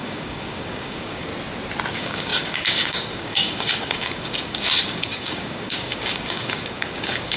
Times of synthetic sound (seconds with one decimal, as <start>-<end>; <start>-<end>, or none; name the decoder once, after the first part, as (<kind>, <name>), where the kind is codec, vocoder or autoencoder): 0.0-1.3 (codec, DAC); 1.9-7.4